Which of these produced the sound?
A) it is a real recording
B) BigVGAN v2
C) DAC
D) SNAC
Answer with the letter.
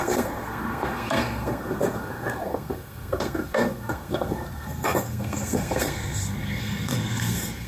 D